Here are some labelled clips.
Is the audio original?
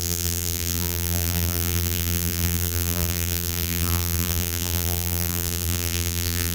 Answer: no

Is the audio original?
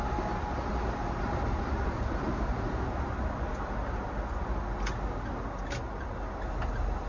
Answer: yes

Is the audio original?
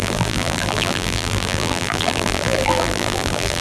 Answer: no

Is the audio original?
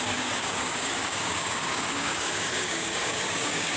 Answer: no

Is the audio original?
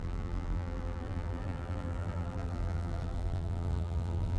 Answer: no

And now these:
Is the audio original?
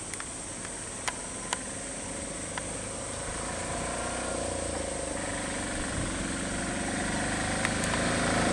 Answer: yes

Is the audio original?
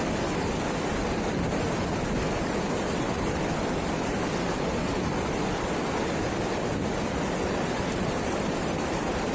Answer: yes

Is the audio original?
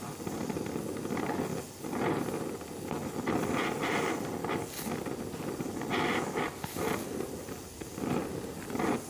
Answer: yes